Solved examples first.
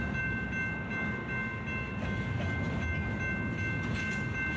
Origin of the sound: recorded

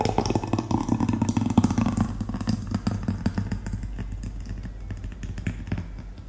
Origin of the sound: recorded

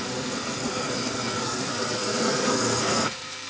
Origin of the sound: remade